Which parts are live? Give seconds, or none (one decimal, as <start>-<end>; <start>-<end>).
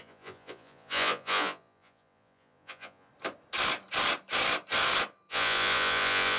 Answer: 3.1-5.3